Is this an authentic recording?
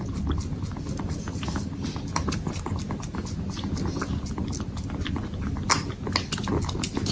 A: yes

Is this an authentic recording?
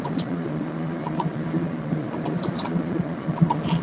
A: no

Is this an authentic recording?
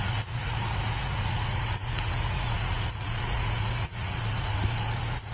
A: no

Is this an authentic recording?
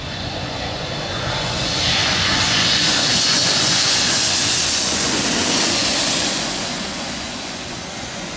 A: no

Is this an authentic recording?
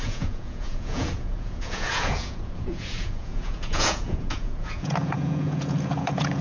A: no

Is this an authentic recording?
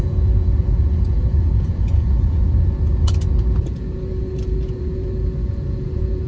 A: no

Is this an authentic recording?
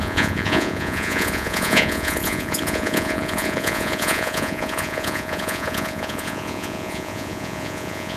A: no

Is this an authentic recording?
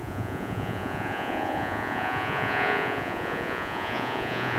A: no